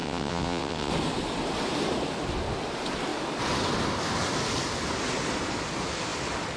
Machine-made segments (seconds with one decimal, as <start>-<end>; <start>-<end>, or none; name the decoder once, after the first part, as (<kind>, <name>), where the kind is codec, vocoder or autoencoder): 0.0-0.9 (vocoder, WaveNeXt)